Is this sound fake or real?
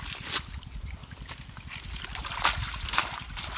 real